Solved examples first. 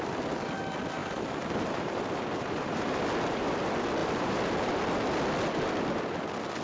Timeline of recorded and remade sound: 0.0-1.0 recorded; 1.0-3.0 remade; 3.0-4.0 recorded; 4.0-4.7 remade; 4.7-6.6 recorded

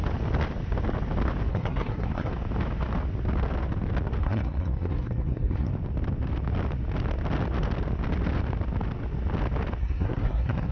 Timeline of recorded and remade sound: 0.0-1.5 recorded; 1.5-2.3 remade; 2.3-4.2 recorded; 4.2-5.7 remade; 5.7-9.8 recorded; 9.8-10.7 remade

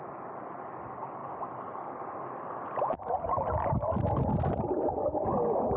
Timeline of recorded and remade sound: 0.0-5.8 recorded

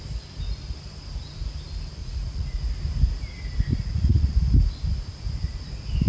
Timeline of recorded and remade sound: 0.0-2.0 recorded; 2.0-2.6 remade; 2.6-3.7 recorded; 3.7-4.3 remade; 4.3-6.1 recorded

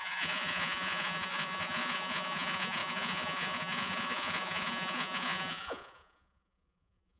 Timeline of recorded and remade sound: 0.0-7.2 remade

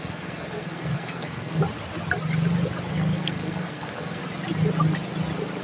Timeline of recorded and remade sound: 0.0-1.6 remade; 1.6-2.9 recorded; 2.9-4.2 remade; 4.2-5.6 recorded

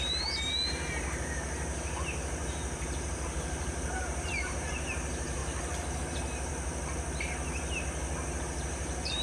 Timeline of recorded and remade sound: 0.0-6.5 remade; 6.5-8.4 recorded; 8.4-9.2 remade